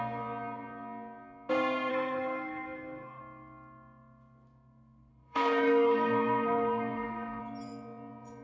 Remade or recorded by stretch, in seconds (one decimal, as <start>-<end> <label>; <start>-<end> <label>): 0.0-1.9 recorded; 1.9-3.2 remade; 3.2-5.1 recorded; 5.1-7.4 remade; 7.4-8.4 recorded